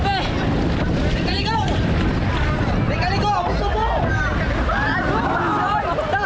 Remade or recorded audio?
recorded